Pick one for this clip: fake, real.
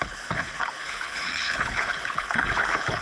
fake